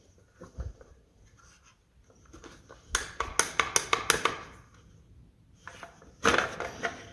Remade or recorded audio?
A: recorded